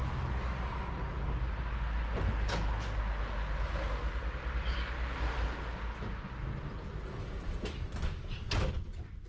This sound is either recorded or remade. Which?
recorded